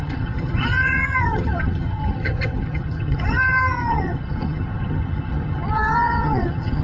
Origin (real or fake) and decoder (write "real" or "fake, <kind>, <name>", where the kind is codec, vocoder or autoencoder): fake, vocoder, HiFi-GAN